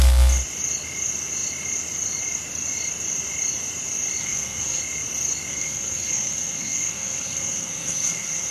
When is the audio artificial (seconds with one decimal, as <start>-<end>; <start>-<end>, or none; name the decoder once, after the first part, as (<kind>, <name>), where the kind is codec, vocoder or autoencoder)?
4.2-4.8 (codec, SNAC); 5.5-8.5